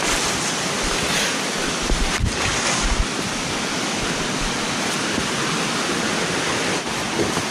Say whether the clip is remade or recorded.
recorded